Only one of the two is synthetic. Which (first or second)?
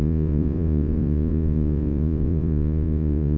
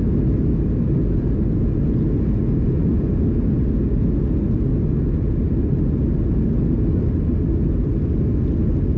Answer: first